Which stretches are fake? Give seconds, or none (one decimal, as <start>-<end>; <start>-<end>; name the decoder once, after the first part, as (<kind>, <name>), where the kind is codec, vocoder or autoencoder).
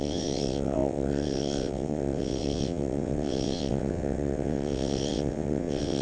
0.0-6.0 (vocoder, WaveNeXt)